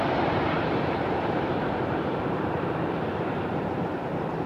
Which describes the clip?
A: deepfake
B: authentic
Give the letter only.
A